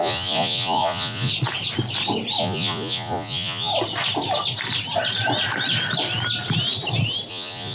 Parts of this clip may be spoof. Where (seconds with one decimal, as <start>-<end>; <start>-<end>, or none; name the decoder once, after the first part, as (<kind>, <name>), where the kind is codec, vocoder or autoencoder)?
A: 0.0-1.3 (vocoder, Vocos); 2.4-3.7; 7.3-7.7